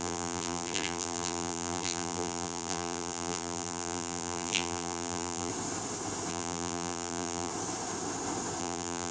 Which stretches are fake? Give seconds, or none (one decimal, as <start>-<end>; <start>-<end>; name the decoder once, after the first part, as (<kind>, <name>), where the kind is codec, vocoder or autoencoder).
0.0-5.5 (vocoder, BigVGAN v2); 6.3-7.5; 8.6-9.1